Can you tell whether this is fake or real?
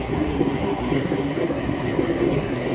fake